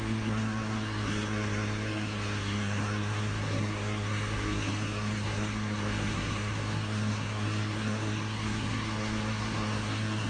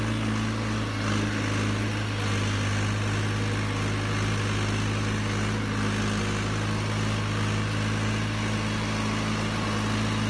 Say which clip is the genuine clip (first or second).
second